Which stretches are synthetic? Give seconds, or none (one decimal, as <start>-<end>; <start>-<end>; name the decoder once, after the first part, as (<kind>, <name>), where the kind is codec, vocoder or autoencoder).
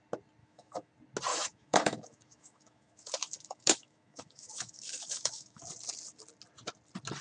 0.4-0.9 (autoencoder, DAC-VAE); 1.3-5.6